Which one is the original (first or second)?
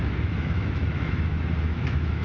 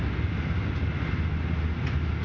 second